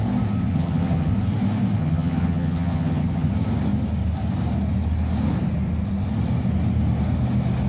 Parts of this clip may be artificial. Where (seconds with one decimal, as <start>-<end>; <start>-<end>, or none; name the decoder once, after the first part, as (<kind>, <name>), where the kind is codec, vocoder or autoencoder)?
0.5-1.1 (vocoder, HiFi-GAN); 1.8-3.3